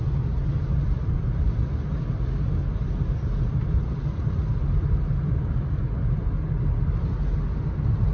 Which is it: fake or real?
real